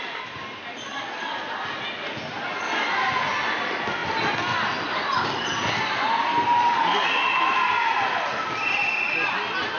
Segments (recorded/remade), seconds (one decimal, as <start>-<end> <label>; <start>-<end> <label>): 0.0-9.8 recorded